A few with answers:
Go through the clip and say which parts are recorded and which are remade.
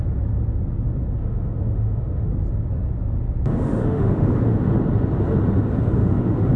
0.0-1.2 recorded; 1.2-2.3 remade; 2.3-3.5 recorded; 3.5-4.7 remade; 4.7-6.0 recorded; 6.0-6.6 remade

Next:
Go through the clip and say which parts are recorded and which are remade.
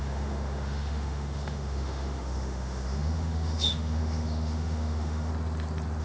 0.0-5.3 remade; 5.3-6.0 recorded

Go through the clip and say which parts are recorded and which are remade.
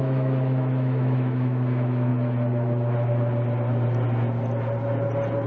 0.0-2.1 remade; 2.1-5.5 recorded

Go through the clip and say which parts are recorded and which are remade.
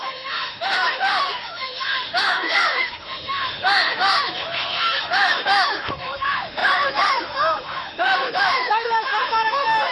0.0-9.9 remade